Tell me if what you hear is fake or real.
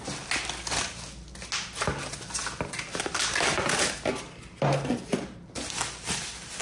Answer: real